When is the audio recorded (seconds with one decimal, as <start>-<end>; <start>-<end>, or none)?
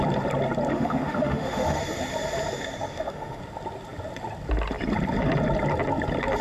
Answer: 0.0-0.7; 1.8-2.9; 3.4-6.4